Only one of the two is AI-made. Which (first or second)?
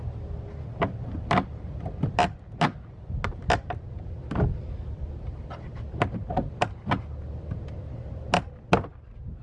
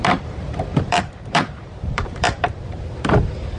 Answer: second